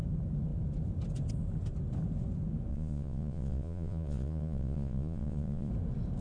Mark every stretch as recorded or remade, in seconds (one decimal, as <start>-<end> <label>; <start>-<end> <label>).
0.0-2.7 recorded; 2.7-5.7 remade; 5.7-6.2 recorded